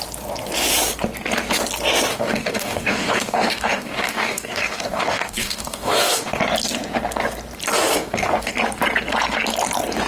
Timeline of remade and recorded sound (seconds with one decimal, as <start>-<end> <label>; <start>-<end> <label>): 0.0-2.1 recorded; 2.1-6.4 remade; 6.4-7.8 recorded; 7.8-8.5 remade; 8.5-10.1 recorded